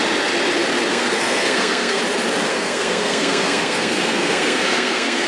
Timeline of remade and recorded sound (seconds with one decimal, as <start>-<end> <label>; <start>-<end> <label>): 0.0-0.9 recorded; 0.9-2.0 remade; 2.0-2.5 recorded; 2.5-5.3 remade